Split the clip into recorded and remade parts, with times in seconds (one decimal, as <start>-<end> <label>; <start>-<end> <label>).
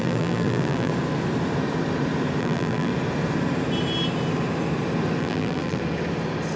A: 0.0-0.9 remade; 0.9-2.4 recorded; 2.4-2.9 remade; 2.9-5.2 recorded; 5.2-5.8 remade; 5.8-6.6 recorded